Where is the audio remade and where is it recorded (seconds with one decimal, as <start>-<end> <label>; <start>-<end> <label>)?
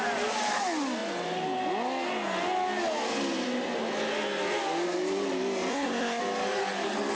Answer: 0.0-5.7 recorded; 5.7-6.2 remade; 6.2-7.2 recorded